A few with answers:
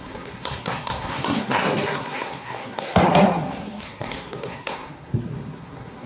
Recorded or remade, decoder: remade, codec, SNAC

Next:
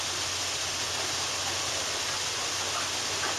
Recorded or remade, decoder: recorded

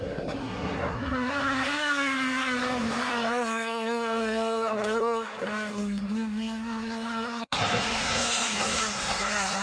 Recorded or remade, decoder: remade, codec, SNAC